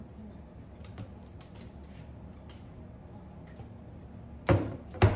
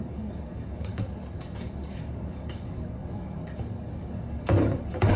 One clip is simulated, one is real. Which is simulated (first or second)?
second